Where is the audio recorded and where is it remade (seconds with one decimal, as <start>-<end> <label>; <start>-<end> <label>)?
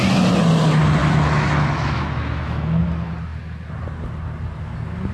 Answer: 0.0-1.0 recorded; 1.0-2.8 remade; 2.8-5.1 recorded